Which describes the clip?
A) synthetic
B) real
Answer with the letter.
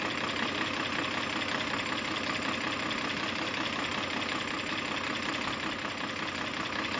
B